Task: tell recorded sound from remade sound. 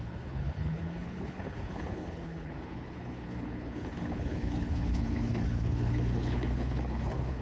remade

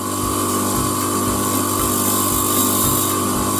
recorded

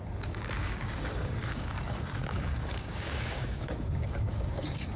remade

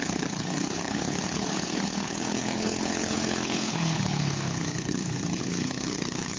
remade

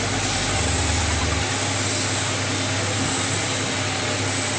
recorded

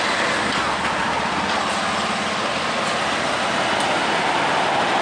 recorded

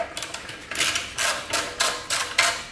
recorded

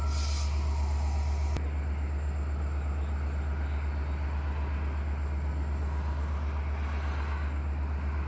recorded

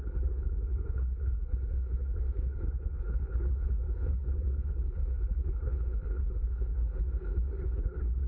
remade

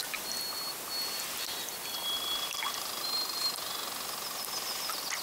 recorded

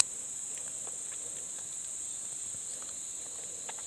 recorded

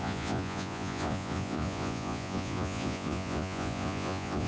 remade